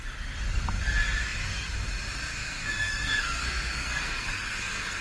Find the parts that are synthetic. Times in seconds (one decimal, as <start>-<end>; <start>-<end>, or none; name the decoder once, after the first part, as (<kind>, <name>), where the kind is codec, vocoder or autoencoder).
2.3-5.0 (codec, SNAC)